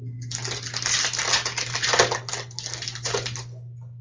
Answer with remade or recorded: recorded